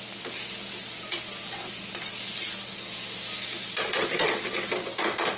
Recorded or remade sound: recorded